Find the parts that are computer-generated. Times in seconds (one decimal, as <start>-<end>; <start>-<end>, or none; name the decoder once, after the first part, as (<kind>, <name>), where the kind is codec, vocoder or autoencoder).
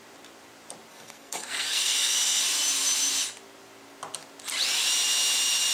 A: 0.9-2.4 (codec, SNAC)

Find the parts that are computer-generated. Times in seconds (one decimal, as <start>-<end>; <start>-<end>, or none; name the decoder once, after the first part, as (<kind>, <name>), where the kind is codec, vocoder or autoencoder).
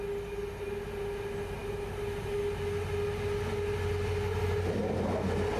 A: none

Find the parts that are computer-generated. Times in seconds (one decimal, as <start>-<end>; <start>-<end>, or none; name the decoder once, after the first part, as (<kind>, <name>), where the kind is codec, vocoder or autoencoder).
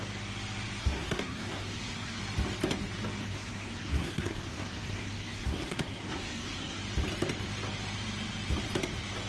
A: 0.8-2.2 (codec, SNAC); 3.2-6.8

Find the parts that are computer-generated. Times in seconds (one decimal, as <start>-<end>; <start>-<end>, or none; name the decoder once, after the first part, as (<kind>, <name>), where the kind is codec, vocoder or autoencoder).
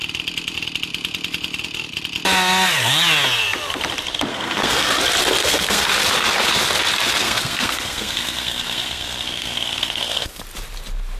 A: 4.3-4.9 (codec, SNAC); 5.4-5.9; 7.2-10.4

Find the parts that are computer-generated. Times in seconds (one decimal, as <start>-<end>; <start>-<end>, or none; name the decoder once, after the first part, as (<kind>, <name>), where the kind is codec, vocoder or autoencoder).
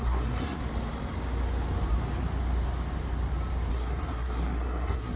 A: 0.0-0.6 (codec, SNAC); 3.7-5.2